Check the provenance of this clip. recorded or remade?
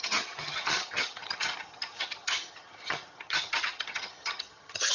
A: remade